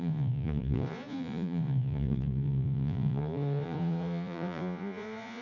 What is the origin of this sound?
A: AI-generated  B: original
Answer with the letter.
A